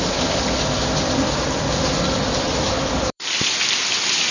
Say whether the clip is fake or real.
fake